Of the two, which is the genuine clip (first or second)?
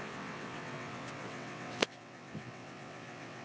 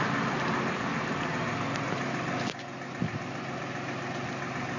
second